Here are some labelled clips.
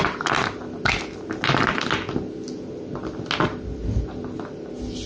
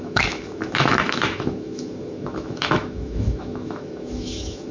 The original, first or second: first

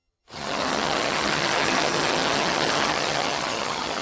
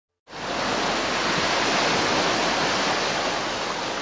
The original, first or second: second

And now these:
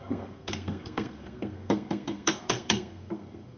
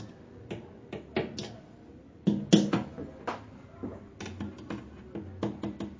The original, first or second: second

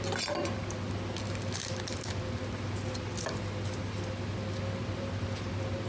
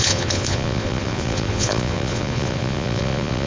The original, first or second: first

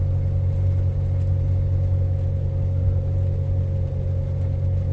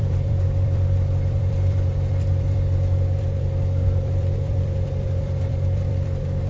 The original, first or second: first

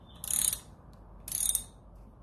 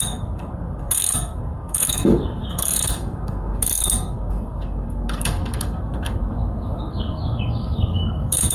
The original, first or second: first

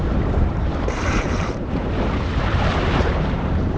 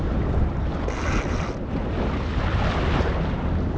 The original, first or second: second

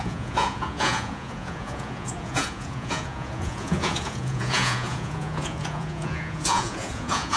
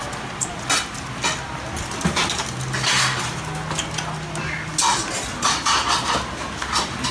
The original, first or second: second